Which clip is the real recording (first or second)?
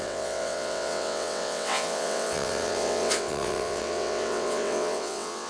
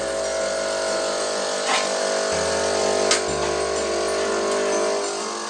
second